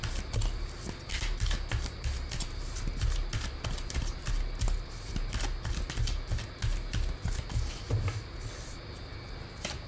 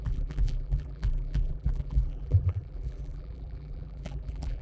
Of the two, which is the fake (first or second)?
second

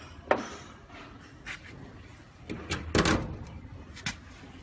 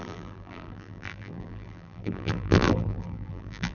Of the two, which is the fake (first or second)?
second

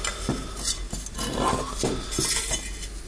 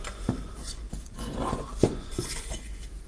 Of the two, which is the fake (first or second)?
second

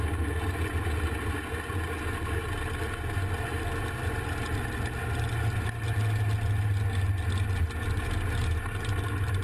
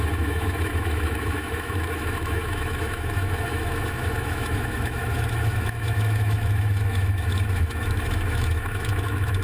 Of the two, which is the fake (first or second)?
second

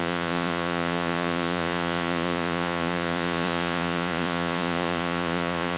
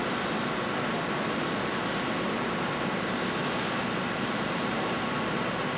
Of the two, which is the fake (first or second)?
first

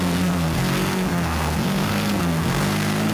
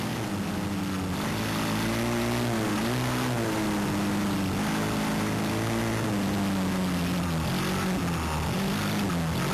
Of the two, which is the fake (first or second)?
first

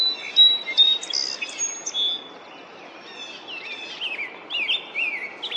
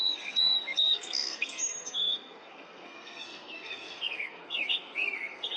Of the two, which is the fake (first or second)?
second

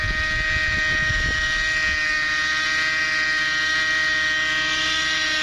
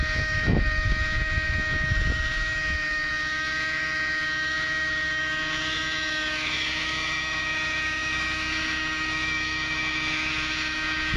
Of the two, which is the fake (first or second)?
second